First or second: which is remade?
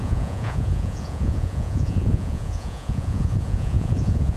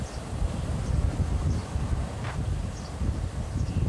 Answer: first